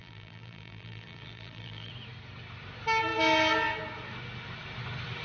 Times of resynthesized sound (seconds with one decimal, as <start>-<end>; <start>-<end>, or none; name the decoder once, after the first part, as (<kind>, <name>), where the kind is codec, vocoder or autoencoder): 0.0-1.9 (vocoder, BigVGAN v2)